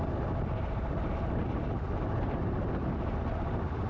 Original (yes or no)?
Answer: yes